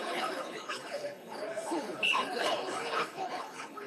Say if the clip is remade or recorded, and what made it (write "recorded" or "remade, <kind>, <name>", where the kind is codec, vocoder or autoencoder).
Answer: remade, codec, HILCodec